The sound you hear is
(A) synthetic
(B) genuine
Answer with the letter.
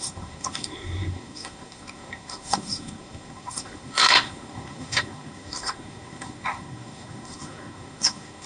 A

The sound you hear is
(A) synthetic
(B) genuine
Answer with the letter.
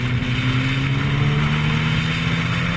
B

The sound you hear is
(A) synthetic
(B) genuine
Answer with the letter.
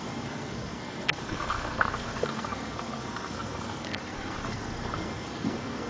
A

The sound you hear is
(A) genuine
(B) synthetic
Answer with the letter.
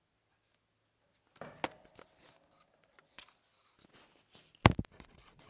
A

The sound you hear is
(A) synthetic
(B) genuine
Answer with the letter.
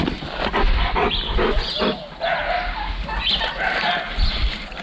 B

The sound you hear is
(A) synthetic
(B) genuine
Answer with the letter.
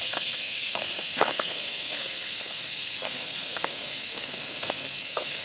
A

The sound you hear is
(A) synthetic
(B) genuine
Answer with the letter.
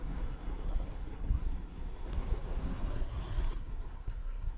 A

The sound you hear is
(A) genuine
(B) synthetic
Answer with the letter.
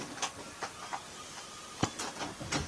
A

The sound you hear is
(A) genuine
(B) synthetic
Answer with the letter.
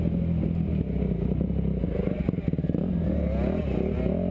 A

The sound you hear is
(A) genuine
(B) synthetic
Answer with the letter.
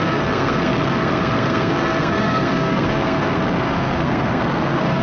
B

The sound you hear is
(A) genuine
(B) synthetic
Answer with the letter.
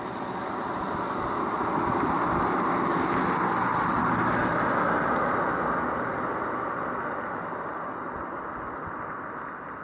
A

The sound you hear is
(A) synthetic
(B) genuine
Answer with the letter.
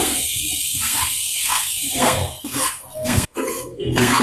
A